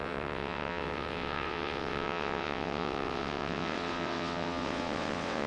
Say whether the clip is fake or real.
fake